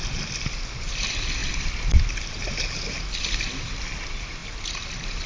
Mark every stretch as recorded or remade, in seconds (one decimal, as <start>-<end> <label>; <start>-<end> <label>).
0.0-5.3 recorded